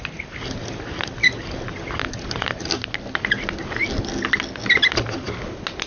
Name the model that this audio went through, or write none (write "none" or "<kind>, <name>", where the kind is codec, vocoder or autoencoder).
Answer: none